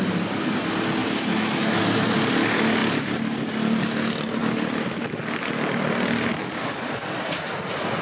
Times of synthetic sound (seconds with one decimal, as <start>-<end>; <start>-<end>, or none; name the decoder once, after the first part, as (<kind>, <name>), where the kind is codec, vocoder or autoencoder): 1.0-1.8 (autoencoder, DAC-VAE)